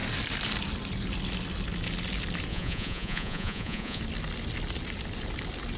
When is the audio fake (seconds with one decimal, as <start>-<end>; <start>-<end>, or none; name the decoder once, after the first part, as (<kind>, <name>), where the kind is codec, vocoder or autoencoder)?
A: 2.5-4.0 (vocoder, Vocos)